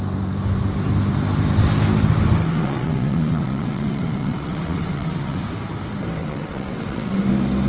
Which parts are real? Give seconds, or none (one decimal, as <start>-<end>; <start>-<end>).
0.0-2.5; 5.4-6.2; 7.2-7.7